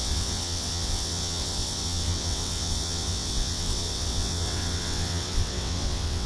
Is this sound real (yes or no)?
no